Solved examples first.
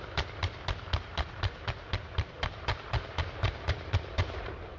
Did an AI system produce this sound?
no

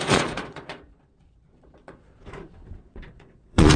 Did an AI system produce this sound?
yes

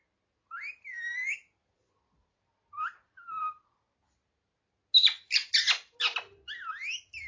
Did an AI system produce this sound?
no